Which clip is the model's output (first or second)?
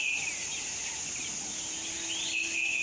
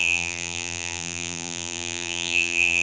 second